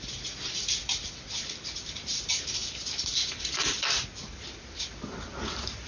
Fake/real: fake